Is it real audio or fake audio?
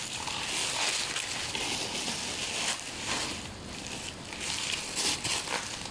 real